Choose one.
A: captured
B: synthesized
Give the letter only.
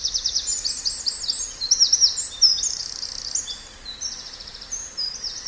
A